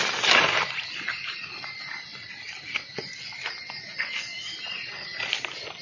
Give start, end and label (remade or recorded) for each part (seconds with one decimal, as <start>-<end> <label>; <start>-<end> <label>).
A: 0.0-5.8 recorded